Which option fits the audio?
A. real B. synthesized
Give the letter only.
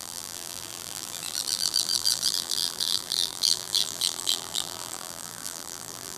B